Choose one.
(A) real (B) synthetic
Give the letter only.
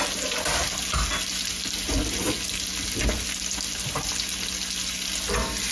A